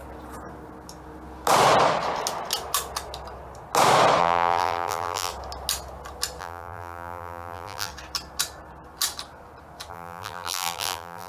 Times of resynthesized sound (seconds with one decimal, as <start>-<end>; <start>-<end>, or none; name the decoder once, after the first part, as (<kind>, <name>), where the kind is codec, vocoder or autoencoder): 4.2-5.3 (vocoder, BigVGAN v2); 6.4-7.9; 9.9-11.3